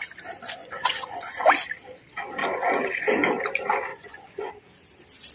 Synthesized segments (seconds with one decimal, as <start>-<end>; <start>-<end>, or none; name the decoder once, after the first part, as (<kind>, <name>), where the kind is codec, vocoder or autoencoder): 0.6-1.5 (vocoder, Vocos); 2.4-3.3; 3.9-4.5